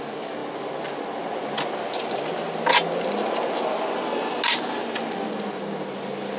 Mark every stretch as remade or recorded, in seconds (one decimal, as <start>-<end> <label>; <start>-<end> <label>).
0.0-6.4 recorded